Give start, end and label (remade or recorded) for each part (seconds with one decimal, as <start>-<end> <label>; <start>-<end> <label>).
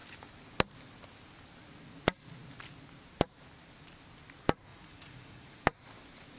0.0-4.7 recorded; 4.7-5.6 remade; 5.6-6.4 recorded